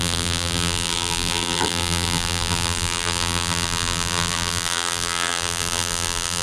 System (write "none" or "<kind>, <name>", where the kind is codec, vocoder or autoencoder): vocoder, BigVGAN v2